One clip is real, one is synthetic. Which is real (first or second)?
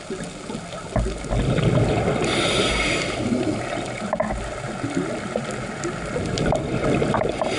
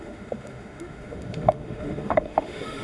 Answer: first